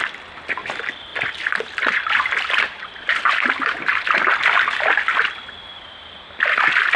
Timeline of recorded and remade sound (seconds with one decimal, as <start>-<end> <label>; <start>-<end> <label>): 0.0-7.0 recorded